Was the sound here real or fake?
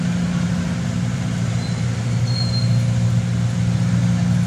real